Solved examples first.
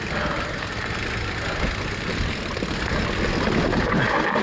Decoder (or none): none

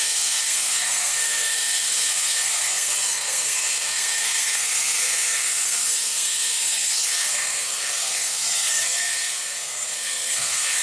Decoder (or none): codec, SNAC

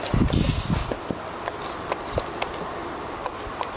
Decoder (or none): none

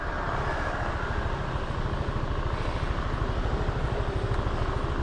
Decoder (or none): none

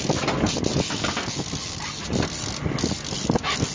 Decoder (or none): none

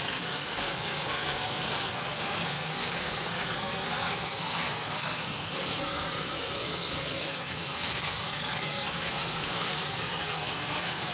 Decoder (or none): codec, SNAC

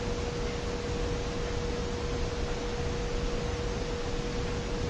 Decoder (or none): none